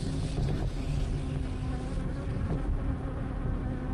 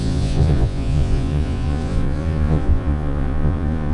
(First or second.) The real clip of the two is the first